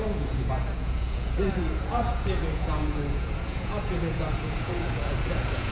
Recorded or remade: remade